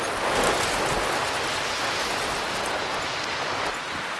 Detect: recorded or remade recorded